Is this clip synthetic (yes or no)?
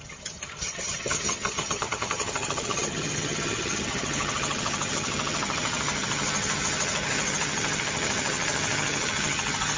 yes